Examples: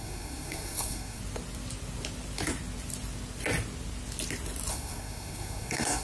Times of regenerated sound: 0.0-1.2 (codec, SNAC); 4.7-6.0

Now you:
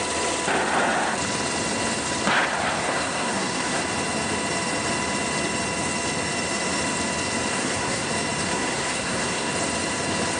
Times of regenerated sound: 2.8-3.8 (codec, SNAC); 7.5-8.1; 8.5-9.5